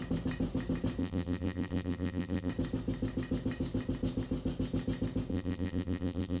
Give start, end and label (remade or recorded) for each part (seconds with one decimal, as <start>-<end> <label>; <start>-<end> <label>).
0.0-1.0 recorded; 1.0-2.5 remade; 2.5-5.3 recorded; 5.3-6.4 remade